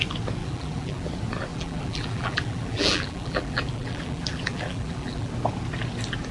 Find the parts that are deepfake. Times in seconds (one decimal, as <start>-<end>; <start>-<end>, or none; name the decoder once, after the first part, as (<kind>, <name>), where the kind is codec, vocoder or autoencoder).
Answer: 0.4-1.1 (vocoder, BigVGAN v2); 1.5-5.3